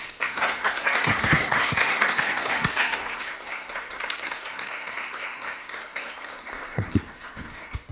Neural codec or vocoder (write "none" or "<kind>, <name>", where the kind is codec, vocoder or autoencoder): codec, SNAC